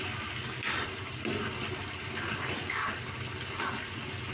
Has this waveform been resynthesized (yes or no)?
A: no